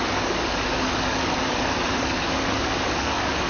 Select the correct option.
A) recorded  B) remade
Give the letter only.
B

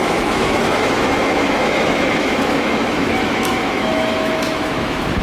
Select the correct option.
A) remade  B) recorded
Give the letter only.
A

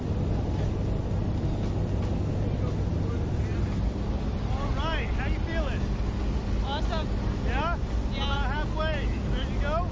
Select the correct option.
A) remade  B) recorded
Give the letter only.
B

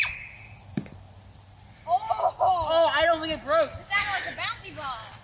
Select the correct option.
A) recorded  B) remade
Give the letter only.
A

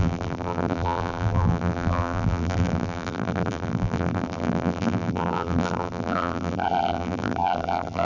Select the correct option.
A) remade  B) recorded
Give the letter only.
A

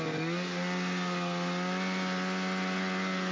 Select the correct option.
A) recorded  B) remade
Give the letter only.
A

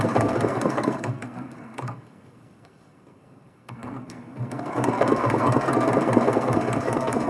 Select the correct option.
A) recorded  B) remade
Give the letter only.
B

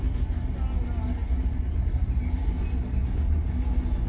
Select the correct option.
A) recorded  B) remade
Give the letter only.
A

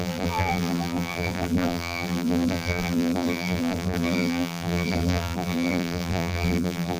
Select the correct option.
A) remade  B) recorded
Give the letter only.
A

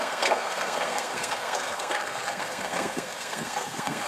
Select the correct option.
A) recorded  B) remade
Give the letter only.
B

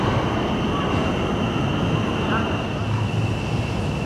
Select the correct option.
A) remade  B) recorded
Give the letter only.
B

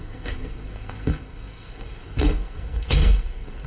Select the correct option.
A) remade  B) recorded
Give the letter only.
A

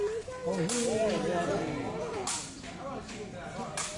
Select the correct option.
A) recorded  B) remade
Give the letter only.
A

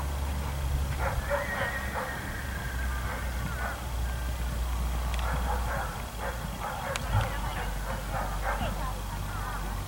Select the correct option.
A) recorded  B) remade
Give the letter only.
A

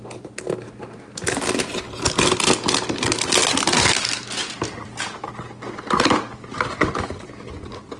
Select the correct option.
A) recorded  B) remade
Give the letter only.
A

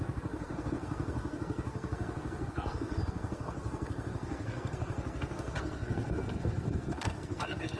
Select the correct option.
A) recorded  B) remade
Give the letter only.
B